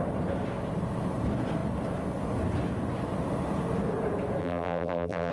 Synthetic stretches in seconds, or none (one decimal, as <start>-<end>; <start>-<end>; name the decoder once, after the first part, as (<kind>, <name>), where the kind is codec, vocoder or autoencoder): 4.4-5.3 (vocoder, BigVGAN v2)